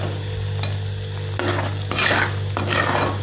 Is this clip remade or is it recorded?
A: recorded